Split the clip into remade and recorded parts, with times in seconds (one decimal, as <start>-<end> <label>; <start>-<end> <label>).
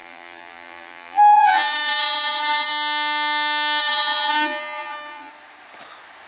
0.0-2.7 remade; 2.7-3.8 recorded; 3.8-5.3 remade; 5.3-6.3 recorded